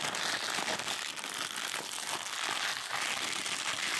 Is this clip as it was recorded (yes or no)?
yes